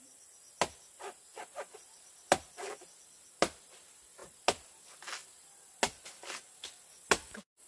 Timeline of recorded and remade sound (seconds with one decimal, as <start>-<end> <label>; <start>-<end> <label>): 0.0-7.7 recorded

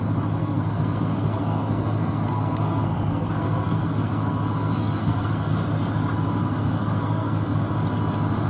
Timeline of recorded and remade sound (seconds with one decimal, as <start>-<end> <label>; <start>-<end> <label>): 0.0-0.4 recorded; 0.4-5.5 remade; 5.5-6.4 recorded; 6.4-7.6 remade; 7.6-8.5 recorded

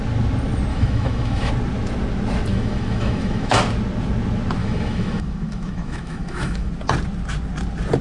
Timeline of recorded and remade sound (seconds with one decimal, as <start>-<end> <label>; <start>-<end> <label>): 0.0-0.7 recorded; 0.7-1.5 remade; 1.5-2.5 recorded; 2.5-3.6 remade; 3.6-4.6 recorded; 4.6-6.7 remade; 6.7-8.0 recorded

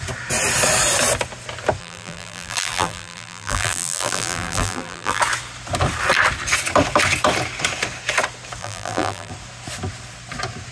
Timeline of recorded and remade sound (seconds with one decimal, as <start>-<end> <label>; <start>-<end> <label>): 0.0-1.8 recorded; 1.8-5.2 remade; 5.2-8.6 recorded; 8.6-9.3 remade; 9.3-10.7 recorded

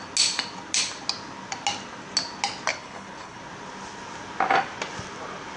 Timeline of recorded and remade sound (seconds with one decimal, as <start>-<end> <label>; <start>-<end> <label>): 0.0-2.7 recorded; 2.7-3.4 remade; 3.4-5.6 recorded

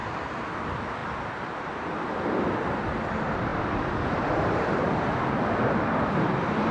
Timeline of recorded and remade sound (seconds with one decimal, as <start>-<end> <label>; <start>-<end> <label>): 0.0-6.7 recorded

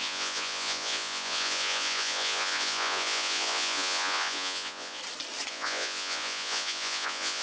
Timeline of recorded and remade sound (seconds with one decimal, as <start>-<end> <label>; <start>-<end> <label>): 0.0-5.0 remade; 5.0-5.5 recorded; 5.5-7.4 remade

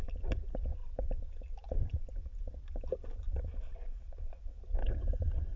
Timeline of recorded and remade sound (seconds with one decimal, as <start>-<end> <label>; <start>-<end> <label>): 0.0-4.8 recorded; 4.8-5.6 remade